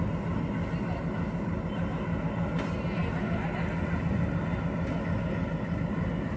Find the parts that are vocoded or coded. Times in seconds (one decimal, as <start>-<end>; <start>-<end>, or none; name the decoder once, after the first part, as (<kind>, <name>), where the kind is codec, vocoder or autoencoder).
none